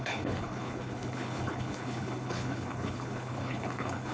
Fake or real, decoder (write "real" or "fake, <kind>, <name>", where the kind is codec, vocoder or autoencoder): fake, codec, HILCodec